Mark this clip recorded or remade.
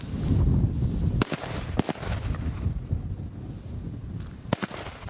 recorded